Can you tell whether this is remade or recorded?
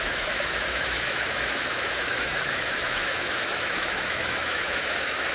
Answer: remade